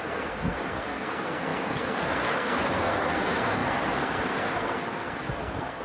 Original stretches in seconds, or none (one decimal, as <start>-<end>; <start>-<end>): none